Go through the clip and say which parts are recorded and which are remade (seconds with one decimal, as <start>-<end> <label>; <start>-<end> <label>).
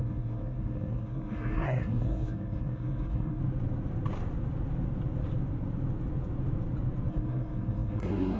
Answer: 0.0-3.4 remade; 3.4-7.1 recorded; 7.1-8.4 remade